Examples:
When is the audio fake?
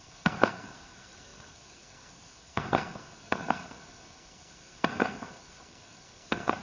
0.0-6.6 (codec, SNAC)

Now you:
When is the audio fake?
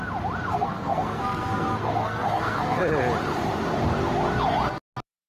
0.5-2.8 (codec, SNAC)